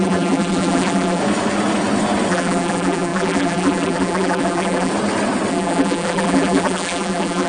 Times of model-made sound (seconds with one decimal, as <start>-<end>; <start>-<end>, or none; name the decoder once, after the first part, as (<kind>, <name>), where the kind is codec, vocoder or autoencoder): 0.0-1.2 (vocoder, BigVGAN v2); 2.3-4.9; 5.5-7.5